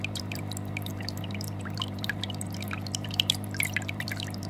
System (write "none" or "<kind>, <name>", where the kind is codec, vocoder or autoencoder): vocoder, BigVGAN v2